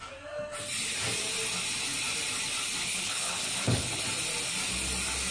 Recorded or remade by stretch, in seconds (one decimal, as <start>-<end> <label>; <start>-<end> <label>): 0.0-2.8 recorded; 2.8-4.0 remade; 4.0-5.3 recorded